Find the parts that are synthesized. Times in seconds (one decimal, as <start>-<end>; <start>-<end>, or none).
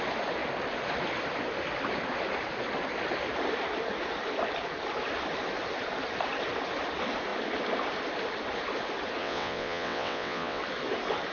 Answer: 9.2-10.6